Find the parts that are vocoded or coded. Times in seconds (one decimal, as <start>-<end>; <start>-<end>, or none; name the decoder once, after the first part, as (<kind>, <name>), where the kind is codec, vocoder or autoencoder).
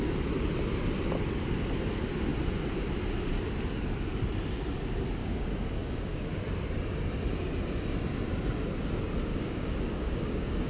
5.2-6.4 (codec, DAC); 9.3-10.7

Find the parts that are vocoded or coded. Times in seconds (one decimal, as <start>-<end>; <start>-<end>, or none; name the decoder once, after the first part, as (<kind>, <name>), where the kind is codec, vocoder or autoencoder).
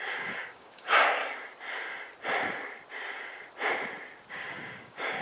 0.0-1.2 (codec, DAC); 4.3-5.2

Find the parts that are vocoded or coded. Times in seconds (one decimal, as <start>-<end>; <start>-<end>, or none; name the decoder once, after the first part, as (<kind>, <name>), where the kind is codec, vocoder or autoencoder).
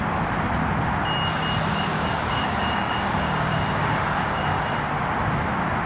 1.7-4.6 (codec, DAC)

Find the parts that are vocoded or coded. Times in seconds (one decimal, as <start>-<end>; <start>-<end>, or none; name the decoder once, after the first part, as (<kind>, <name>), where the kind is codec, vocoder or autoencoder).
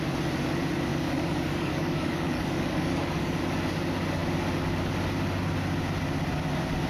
0.9-3.4 (codec, DAC)